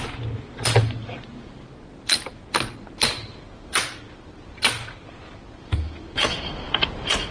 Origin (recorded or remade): recorded